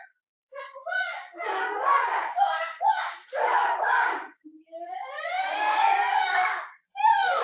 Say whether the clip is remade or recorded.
remade